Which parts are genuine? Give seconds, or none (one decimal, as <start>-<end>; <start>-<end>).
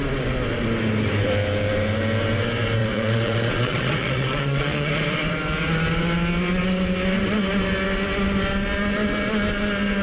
0.0-2.8; 4.9-10.0